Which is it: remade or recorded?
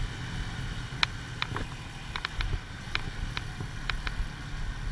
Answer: recorded